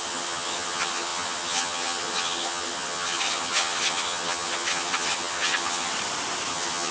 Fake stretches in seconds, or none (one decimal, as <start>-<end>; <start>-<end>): 0.0-5.9; 6.5-6.9